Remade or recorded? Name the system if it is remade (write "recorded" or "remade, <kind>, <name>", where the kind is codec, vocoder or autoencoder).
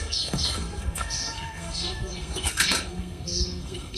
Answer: remade, codec, SNAC